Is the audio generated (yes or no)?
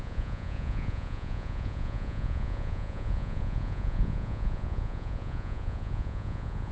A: yes